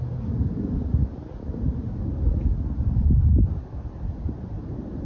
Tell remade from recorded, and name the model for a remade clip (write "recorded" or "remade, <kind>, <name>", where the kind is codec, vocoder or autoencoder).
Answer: recorded